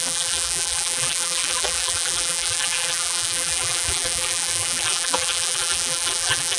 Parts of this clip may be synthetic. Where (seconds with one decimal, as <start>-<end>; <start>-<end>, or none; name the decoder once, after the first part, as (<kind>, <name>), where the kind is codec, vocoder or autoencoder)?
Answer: 0.0-6.6 (vocoder, BigVGAN v2)